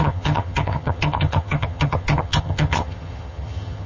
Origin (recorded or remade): remade